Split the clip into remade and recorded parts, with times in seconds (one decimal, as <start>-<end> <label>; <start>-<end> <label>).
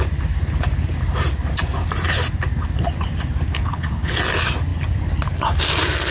0.0-3.5 recorded; 3.5-4.1 remade; 4.1-6.1 recorded